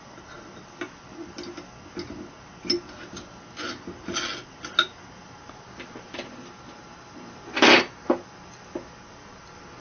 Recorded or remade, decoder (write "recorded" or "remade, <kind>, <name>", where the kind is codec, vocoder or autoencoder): recorded